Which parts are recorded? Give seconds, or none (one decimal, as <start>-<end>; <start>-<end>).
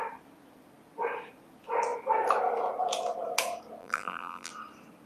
0.0-3.8; 4.5-5.1